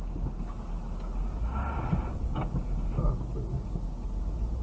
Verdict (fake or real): real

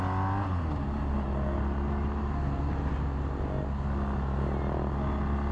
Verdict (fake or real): real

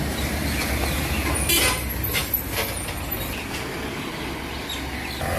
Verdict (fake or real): real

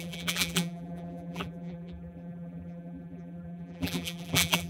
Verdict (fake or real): fake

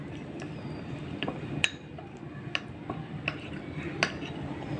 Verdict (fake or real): real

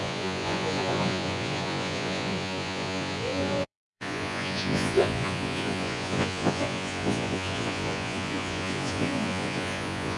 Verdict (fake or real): fake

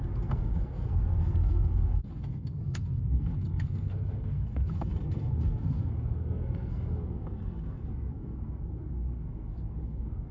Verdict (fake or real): fake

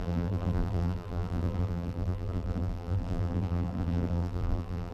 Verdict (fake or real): fake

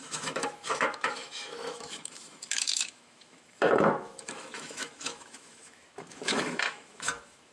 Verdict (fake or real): fake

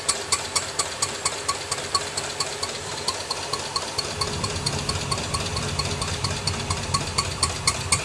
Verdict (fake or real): real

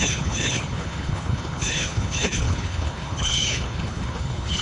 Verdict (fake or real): fake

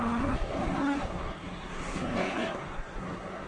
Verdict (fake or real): fake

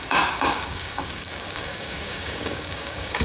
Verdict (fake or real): fake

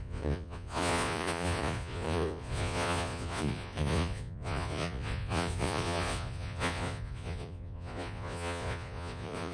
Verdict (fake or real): fake